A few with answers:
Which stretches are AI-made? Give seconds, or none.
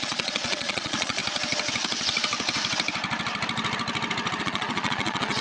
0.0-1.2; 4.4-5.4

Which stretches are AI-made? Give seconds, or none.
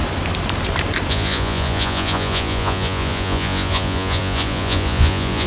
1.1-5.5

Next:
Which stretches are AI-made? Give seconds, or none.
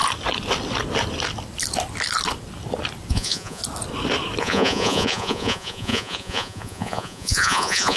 3.1-3.6; 4.4-8.0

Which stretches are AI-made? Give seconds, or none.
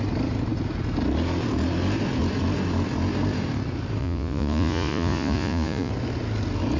4.0-5.9